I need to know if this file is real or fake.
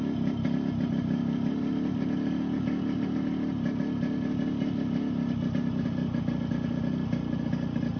real